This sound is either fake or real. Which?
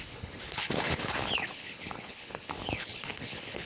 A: fake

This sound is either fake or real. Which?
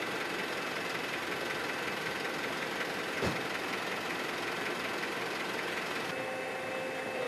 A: real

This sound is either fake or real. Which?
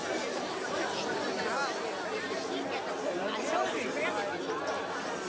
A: real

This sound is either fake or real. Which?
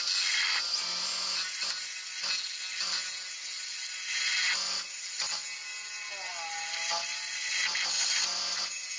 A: real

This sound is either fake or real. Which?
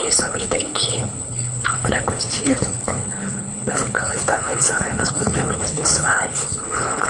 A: fake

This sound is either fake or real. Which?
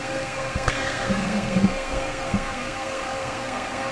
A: fake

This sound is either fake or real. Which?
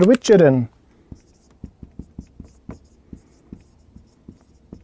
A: real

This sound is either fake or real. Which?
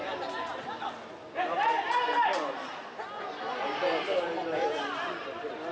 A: real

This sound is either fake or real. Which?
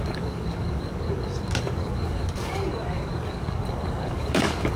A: fake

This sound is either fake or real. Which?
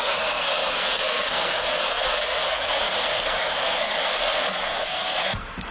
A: fake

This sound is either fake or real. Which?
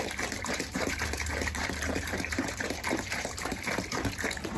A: fake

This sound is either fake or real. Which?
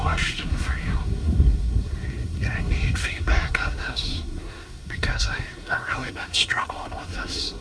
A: fake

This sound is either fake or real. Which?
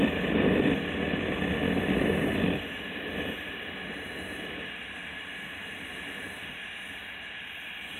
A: real